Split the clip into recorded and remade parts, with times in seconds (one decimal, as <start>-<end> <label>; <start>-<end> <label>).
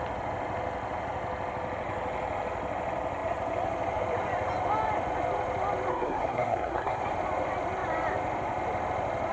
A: 0.0-5.9 recorded; 5.9-7.0 remade; 7.0-9.3 recorded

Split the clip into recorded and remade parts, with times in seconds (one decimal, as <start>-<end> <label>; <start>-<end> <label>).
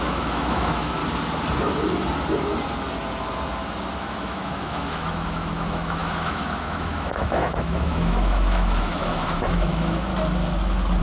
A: 0.0-1.0 remade; 1.0-4.0 recorded; 4.0-10.1 remade; 10.1-11.0 recorded